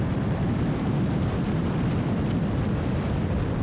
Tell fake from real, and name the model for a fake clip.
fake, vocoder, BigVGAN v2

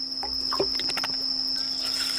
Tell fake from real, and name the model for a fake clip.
real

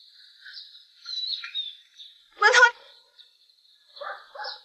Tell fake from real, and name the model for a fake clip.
fake, vocoder, BigVGAN v2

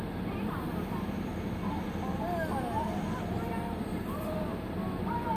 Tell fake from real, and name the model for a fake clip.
real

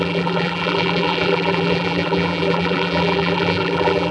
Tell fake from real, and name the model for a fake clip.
fake, vocoder, BigVGAN v2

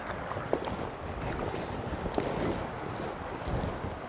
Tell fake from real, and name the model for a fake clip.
real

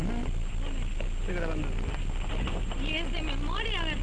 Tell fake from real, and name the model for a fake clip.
real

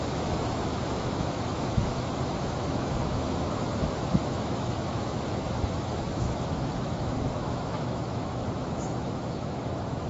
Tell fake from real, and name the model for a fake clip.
fake, autoencoder, DAC-VAE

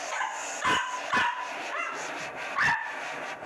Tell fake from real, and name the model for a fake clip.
real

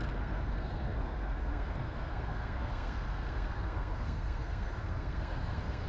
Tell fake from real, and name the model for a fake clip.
fake, codec, SNAC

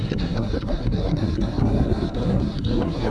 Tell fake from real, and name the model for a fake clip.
fake, codec, SNAC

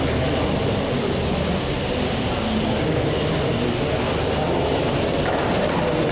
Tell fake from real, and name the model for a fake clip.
real